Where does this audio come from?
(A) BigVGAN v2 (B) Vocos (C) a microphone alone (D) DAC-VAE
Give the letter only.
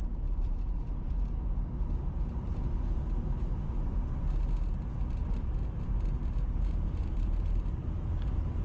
A